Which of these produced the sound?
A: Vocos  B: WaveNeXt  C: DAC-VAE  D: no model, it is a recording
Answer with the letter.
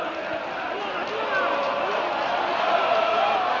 D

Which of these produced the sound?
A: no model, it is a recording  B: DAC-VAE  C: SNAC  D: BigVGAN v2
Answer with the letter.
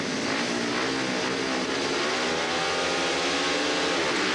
A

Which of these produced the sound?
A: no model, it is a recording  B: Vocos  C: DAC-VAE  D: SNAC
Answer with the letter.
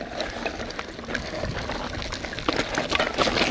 A